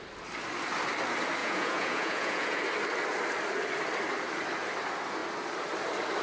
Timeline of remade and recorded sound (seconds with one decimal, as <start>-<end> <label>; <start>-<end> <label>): 0.0-1.4 recorded; 1.4-2.6 remade; 2.6-6.2 recorded